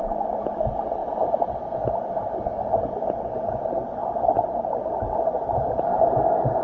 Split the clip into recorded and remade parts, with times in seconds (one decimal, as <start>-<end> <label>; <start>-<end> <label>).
0.0-6.6 recorded